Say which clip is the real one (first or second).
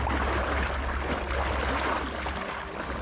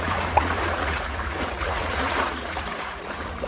first